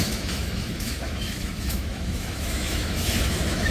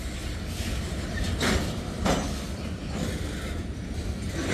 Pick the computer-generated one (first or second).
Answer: first